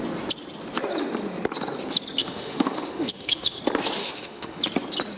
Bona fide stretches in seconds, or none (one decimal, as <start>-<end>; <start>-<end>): 0.0-2.2; 3.6-4.0; 4.6-5.2